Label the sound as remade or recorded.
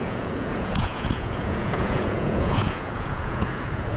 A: remade